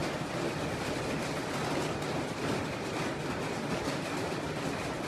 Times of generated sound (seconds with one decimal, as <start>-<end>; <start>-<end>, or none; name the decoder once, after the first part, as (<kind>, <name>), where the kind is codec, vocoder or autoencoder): none